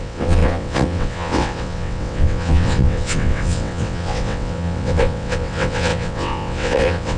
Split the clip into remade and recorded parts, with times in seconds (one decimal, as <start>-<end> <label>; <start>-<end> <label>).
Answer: 0.0-7.2 remade